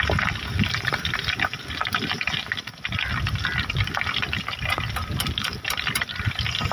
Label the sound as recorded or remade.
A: recorded